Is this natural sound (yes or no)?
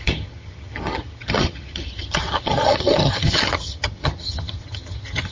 no